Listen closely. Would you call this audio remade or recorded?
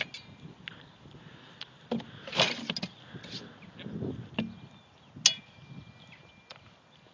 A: recorded